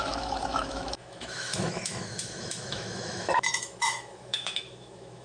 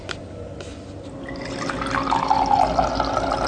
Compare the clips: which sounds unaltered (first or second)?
second